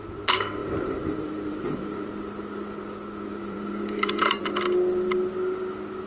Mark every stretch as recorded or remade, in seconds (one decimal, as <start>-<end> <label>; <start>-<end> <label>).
0.0-0.6 recorded; 0.6-2.1 remade; 2.1-3.3 recorded; 3.3-4.4 remade; 4.4-6.1 recorded